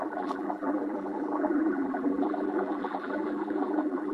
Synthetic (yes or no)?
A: yes